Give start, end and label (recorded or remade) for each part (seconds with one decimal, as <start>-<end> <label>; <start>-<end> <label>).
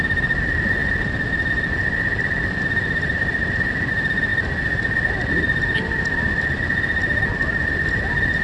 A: 0.0-7.0 remade; 7.0-7.6 recorded; 7.6-8.4 remade